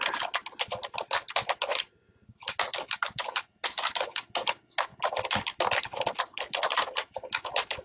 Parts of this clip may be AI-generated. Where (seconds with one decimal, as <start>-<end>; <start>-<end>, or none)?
none